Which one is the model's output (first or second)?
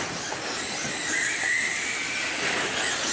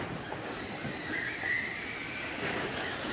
second